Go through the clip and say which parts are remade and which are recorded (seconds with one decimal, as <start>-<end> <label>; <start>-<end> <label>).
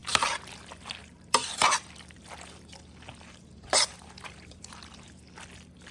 0.0-0.6 remade; 0.6-1.0 recorded; 1.0-2.0 remade; 2.0-3.5 recorded; 3.5-5.2 remade; 5.2-5.9 recorded